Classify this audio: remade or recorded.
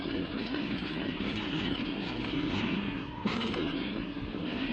remade